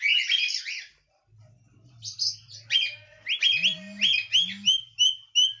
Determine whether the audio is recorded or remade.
recorded